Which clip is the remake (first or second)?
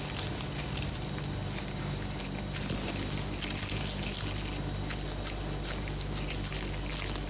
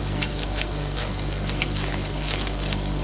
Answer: second